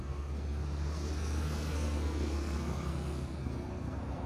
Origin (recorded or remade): remade